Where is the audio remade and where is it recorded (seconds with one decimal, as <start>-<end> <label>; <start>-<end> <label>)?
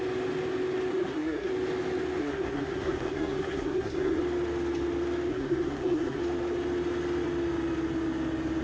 0.0-0.9 recorded; 0.9-1.5 remade; 1.5-2.2 recorded; 2.2-4.2 remade; 4.2-5.3 recorded; 5.3-6.2 remade; 6.2-8.6 recorded